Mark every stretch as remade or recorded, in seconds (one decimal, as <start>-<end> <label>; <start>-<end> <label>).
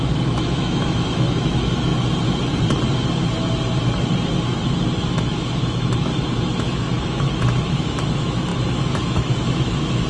0.0-1.9 remade; 1.9-5.1 recorded; 5.1-6.1 remade; 6.1-6.6 recorded; 6.6-10.1 remade